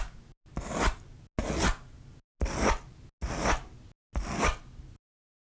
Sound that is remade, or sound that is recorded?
recorded